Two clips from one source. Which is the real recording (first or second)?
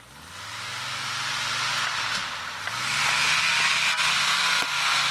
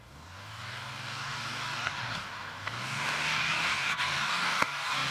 first